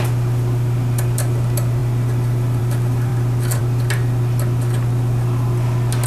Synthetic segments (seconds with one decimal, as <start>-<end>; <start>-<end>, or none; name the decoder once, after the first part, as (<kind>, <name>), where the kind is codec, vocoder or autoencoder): none